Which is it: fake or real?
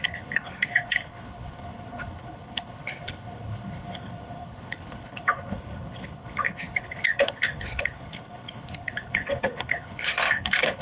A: fake